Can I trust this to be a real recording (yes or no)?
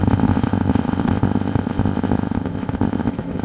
no